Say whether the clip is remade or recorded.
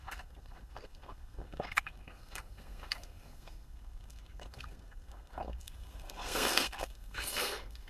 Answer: remade